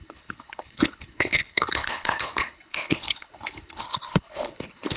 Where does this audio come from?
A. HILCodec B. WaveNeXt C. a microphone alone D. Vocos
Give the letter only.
A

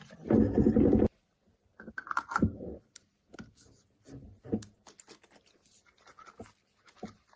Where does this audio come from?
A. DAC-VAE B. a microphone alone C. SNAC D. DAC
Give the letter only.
B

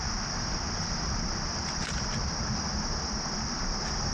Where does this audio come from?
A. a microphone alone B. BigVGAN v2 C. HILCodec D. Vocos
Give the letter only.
A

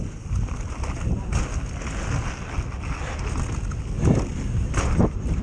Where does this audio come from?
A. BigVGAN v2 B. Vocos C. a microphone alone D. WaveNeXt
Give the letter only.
C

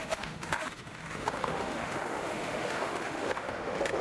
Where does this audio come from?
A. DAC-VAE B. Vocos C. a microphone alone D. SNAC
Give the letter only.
A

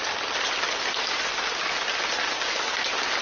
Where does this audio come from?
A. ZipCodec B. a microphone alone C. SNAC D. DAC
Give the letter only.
B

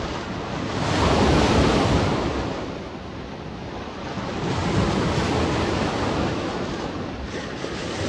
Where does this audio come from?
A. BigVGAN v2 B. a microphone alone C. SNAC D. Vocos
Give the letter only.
B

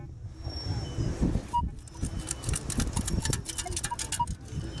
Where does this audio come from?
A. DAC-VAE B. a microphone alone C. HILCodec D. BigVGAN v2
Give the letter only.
B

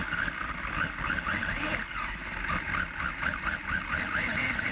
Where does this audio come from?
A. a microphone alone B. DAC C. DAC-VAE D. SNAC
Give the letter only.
A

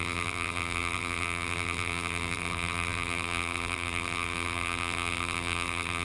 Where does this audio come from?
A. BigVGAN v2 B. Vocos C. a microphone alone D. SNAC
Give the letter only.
A